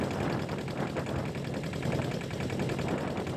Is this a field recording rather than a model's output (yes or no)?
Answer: yes